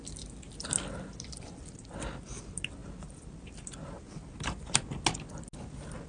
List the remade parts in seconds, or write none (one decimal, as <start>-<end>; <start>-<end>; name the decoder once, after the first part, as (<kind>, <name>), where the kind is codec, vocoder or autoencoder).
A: none